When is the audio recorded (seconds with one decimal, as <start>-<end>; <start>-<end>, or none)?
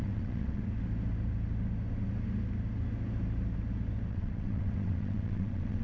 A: 0.6-4.1